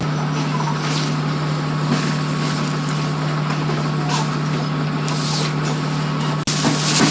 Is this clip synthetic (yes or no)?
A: no